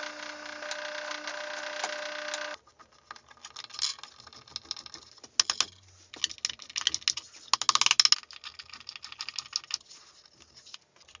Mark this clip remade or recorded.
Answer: recorded